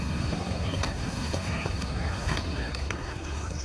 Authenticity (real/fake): fake